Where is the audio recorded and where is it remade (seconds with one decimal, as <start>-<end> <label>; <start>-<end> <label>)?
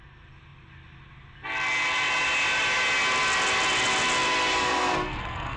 0.0-4.5 recorded; 4.5-5.6 remade